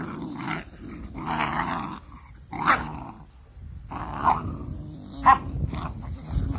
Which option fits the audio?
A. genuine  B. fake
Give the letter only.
A